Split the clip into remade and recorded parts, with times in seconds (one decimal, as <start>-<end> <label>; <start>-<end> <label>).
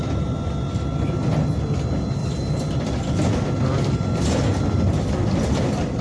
0.0-2.2 recorded; 2.2-3.6 remade; 3.6-6.0 recorded